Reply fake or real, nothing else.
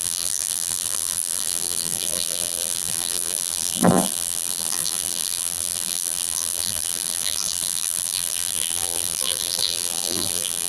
fake